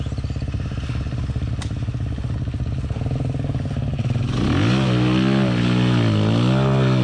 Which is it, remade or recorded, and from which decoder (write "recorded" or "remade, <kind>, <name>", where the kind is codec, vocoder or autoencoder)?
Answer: recorded